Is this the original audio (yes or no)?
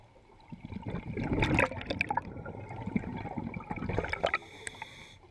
yes